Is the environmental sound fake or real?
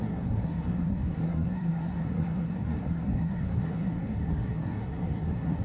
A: fake